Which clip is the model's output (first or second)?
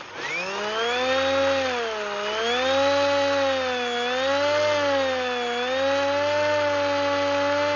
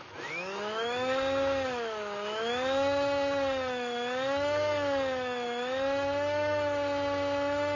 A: second